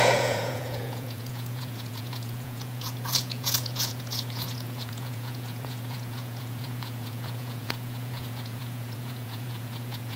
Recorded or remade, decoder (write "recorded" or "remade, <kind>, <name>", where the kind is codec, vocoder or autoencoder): remade, vocoder, Vocos